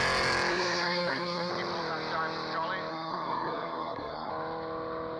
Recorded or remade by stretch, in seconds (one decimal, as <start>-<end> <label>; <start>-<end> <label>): 0.0-0.5 recorded; 0.5-1.5 remade; 1.5-2.9 recorded; 2.9-4.3 remade; 4.3-5.2 recorded